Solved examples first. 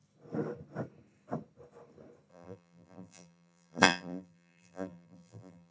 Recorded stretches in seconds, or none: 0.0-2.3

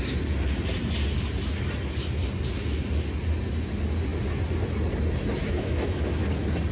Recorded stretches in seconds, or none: 0.0-5.4; 6.1-6.7